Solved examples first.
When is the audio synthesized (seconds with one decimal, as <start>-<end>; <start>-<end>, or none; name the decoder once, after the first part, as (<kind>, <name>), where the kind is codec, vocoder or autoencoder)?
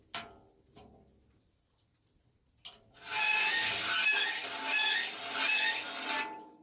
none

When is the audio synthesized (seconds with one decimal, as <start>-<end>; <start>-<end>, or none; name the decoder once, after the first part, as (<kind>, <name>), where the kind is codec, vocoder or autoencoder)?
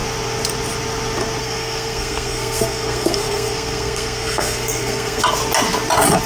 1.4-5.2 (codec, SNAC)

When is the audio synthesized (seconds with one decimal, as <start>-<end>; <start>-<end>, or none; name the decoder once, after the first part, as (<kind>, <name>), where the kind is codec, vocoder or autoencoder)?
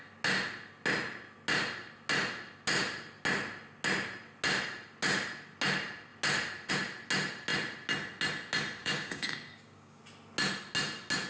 8.8-10.0 (codec, DAC)